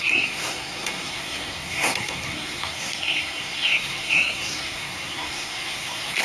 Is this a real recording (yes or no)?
no